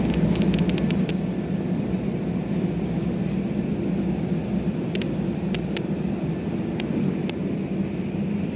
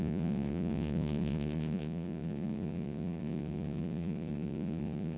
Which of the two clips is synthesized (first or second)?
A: second